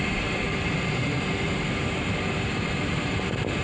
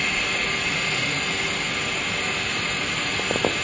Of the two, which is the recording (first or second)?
second